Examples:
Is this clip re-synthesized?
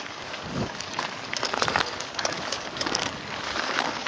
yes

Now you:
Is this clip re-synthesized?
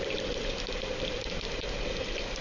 no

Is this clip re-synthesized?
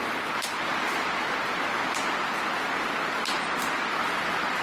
no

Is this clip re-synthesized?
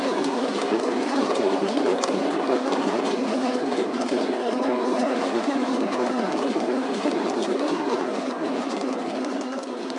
yes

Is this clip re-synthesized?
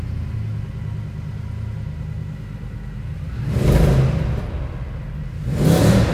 no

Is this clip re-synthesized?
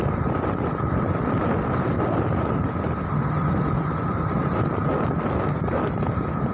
no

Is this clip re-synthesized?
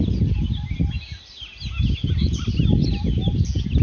no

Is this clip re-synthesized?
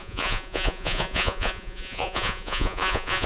yes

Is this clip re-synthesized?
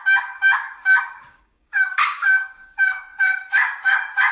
yes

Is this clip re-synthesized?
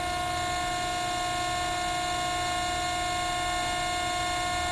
no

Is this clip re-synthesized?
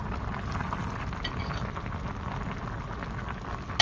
no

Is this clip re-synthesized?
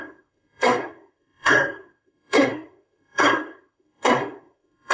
yes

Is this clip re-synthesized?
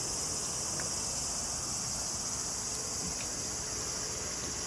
no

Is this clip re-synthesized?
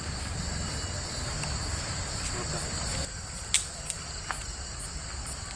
no